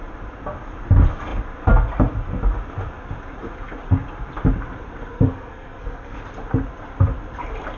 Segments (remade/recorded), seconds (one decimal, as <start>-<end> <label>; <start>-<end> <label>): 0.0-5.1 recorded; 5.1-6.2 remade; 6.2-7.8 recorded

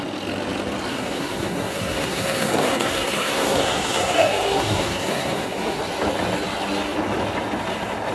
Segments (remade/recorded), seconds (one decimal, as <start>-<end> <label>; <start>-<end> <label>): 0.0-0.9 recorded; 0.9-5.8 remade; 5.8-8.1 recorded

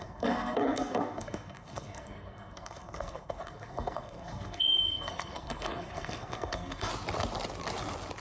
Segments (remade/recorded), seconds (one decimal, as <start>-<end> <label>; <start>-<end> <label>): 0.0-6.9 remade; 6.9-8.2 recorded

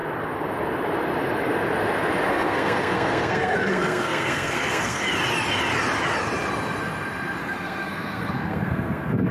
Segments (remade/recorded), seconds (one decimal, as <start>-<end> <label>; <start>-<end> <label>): 0.0-2.3 recorded; 2.3-5.0 remade; 5.0-7.4 recorded; 7.4-9.3 remade

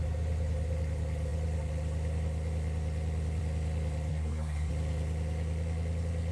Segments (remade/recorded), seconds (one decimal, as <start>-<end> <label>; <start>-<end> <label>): 0.0-4.1 recorded; 4.1-4.7 remade; 4.7-6.3 recorded

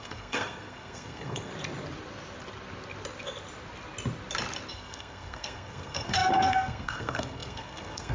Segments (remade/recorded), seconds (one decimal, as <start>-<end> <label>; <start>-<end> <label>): 0.0-1.5 remade; 1.5-4.7 recorded; 4.7-8.1 remade